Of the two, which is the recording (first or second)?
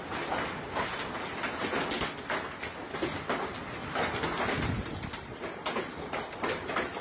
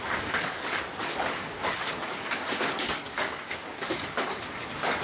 first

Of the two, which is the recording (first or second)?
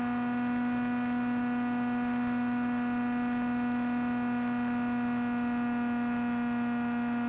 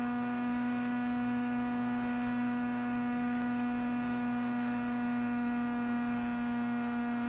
first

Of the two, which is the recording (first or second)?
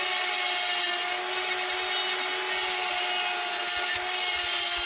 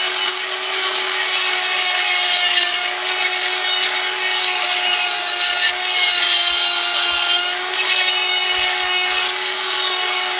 first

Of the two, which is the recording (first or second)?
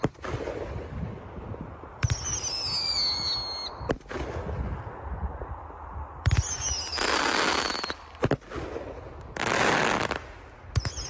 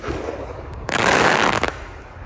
first